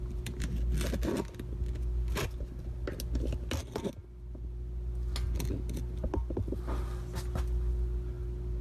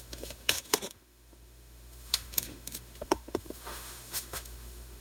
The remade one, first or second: second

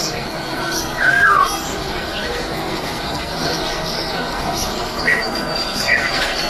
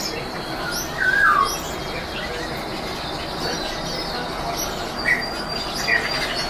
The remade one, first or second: first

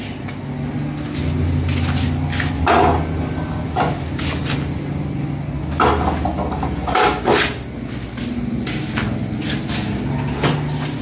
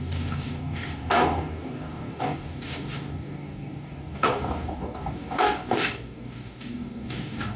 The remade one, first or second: second